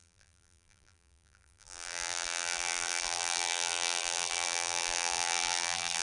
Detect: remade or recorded remade